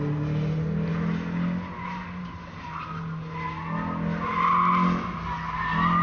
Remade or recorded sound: recorded